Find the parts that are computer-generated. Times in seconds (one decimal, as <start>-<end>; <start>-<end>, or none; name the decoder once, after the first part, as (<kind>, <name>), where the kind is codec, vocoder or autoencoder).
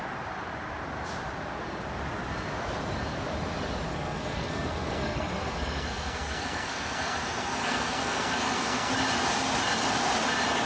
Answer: 3.9-8.9 (codec, SNAC)